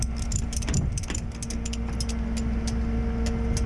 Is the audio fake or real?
real